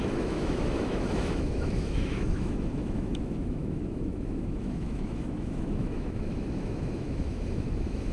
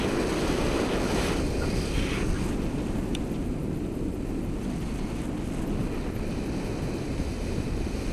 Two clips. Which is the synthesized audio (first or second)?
first